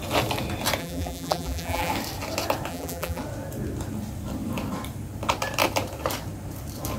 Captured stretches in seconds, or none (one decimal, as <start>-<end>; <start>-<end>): 0.0-0.8; 1.9-2.7; 3.2-7.0